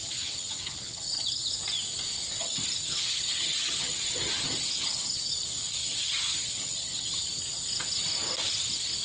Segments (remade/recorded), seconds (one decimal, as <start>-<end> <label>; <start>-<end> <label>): 0.0-1.5 remade; 1.5-2.4 recorded; 2.4-5.3 remade; 5.3-5.8 recorded; 5.8-7.4 remade; 7.4-9.0 recorded